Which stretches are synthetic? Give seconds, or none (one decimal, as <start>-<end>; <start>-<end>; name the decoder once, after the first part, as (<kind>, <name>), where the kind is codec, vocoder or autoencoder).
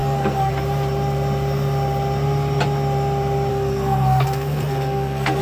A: 0.0-0.5 (codec, SNAC); 3.5-5.4